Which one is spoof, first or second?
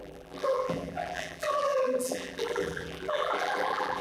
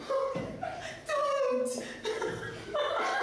first